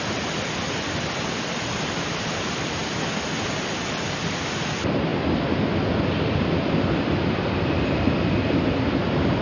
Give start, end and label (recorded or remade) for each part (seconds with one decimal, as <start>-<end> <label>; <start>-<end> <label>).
0.0-9.4 recorded